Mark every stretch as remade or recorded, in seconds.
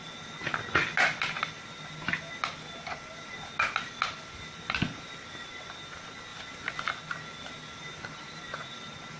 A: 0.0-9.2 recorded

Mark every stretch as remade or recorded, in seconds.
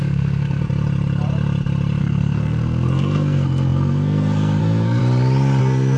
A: 0.0-0.6 remade; 0.6-2.0 recorded; 2.0-5.0 remade; 5.0-5.6 recorded; 5.6-6.0 remade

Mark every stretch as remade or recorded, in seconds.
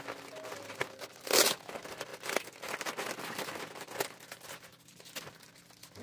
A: 0.0-6.0 recorded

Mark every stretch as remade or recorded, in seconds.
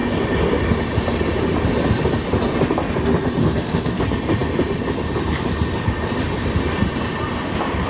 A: 0.0-3.4 recorded; 3.4-4.0 remade; 4.0-7.9 recorded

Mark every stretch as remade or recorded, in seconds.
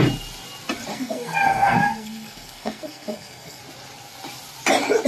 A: 0.0-0.9 recorded; 0.9-3.6 remade; 3.6-5.1 recorded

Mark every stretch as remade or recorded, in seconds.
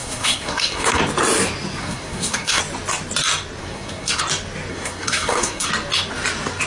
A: 0.0-1.0 remade; 1.0-1.8 recorded; 1.8-2.6 remade; 2.6-3.6 recorded; 3.6-4.2 remade; 4.2-4.7 recorded; 4.7-5.7 remade; 5.7-6.7 recorded